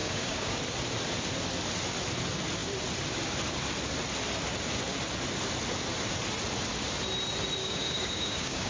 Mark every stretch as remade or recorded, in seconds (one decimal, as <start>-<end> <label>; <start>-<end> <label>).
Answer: 0.0-0.6 remade; 0.6-7.6 recorded; 7.6-8.7 remade